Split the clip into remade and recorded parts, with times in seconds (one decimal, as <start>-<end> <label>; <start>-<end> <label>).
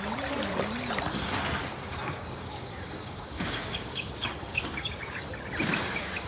0.0-1.6 recorded; 1.6-5.0 remade; 5.0-5.7 recorded; 5.7-6.3 remade